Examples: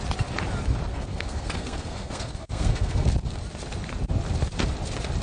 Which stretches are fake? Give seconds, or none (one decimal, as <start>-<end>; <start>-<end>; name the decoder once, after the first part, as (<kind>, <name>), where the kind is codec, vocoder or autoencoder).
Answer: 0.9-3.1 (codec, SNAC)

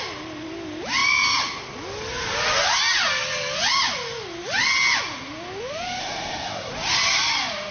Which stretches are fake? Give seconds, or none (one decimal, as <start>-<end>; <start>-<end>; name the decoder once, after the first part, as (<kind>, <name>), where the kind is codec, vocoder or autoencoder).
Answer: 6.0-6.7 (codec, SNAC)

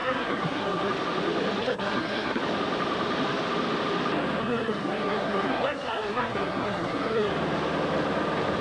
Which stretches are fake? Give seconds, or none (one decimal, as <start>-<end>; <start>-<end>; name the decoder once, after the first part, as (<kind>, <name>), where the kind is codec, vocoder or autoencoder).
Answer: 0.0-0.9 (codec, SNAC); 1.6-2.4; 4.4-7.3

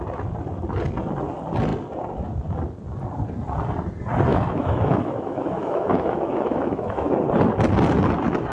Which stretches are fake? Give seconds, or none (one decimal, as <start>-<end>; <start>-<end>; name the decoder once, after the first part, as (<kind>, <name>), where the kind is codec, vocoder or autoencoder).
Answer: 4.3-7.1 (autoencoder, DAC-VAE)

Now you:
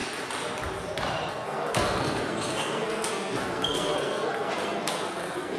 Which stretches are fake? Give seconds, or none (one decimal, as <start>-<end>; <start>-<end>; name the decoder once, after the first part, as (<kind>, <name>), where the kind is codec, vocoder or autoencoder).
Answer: 1.3-5.6 (codec, SNAC)

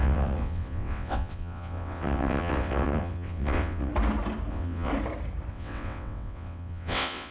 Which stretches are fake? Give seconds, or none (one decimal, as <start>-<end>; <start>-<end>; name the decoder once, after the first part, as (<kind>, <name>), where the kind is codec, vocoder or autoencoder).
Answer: 0.0-3.9 (vocoder, WaveNeXt); 4.5-4.9; 5.5-7.3

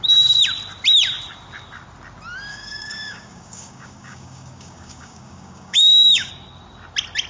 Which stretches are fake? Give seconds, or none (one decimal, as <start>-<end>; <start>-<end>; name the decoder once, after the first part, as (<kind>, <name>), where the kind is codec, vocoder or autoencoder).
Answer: 2.5-6.3 (codec, DAC)

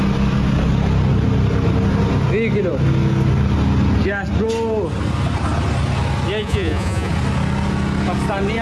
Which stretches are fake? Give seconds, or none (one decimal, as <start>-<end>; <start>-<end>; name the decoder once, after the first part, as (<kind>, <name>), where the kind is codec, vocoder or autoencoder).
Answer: 6.4-7.1 (vocoder, Vocos)